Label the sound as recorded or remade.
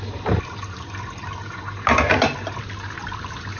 recorded